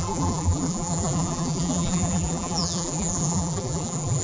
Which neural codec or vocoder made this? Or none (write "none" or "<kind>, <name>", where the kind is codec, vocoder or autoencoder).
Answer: vocoder, BigVGAN v2